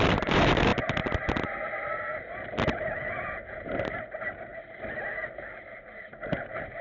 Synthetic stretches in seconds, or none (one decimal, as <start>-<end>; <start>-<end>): 0.0-0.7; 3.9-4.5; 6.3-6.8